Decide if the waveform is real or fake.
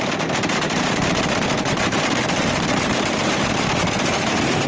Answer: fake